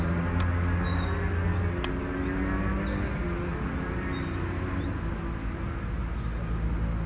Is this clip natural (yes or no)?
yes